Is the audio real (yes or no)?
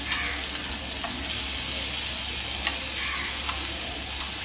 yes